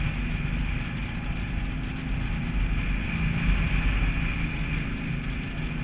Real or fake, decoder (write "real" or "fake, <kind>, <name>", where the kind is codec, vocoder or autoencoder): real